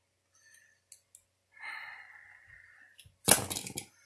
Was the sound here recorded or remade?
recorded